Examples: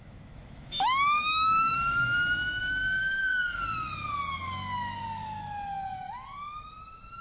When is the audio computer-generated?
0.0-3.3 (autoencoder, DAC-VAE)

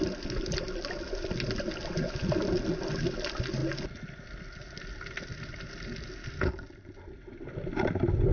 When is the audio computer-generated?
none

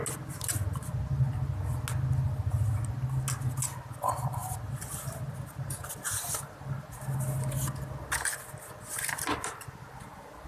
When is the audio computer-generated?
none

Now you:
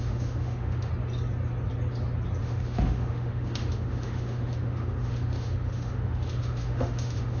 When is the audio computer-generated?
0.0-0.9 (autoencoder, DAC-VAE); 2.4-7.4

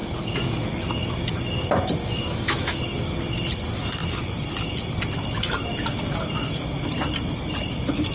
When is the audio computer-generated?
2.0-2.8 (autoencoder, DAC-VAE)